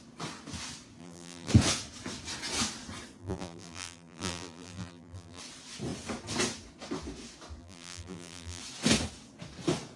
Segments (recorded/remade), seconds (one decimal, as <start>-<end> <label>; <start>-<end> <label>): 0.0-1.0 recorded; 1.0-1.5 remade; 1.5-3.2 recorded; 3.2-5.4 remade; 5.4-7.6 recorded; 7.6-8.6 remade; 8.6-10.0 recorded